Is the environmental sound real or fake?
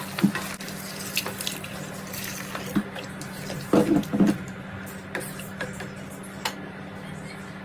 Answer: real